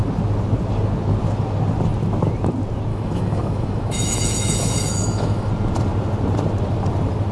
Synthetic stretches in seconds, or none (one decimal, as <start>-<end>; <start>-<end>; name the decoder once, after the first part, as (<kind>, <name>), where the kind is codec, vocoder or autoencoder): 2.9-5.5 (autoencoder, DAC-VAE)